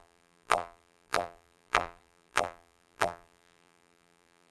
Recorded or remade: remade